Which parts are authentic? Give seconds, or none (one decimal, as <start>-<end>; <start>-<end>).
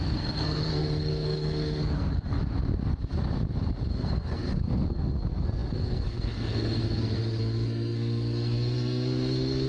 2.4-3.9